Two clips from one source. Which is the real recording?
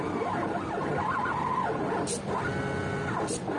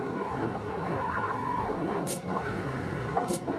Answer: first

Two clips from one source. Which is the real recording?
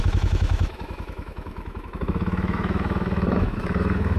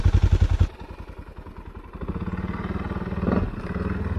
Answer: second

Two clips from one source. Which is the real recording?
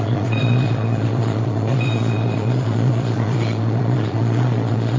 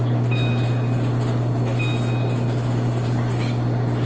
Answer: second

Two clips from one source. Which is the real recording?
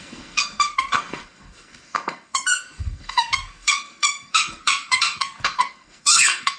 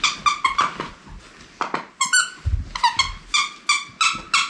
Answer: second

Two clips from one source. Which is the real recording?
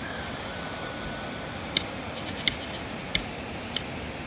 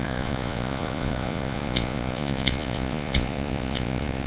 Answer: first